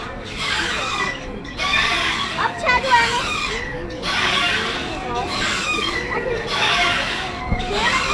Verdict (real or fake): fake